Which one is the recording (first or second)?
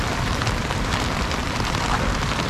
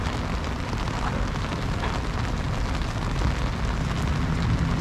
second